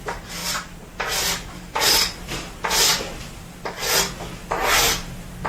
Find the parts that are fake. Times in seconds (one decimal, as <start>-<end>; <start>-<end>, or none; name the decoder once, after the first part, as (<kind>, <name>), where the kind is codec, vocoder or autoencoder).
none